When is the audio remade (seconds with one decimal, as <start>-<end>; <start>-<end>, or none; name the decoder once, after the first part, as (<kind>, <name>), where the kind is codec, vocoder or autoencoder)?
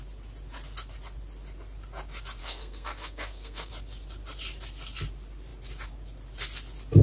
2.4-3.7 (codec, SNAC)